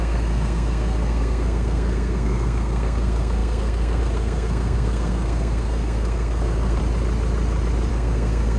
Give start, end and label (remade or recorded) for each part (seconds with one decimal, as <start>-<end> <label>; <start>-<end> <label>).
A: 0.0-6.8 remade; 6.8-7.9 recorded; 7.9-8.6 remade